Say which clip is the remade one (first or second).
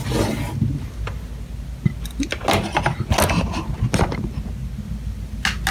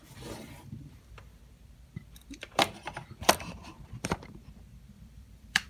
second